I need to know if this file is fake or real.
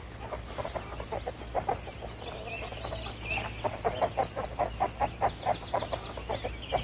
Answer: real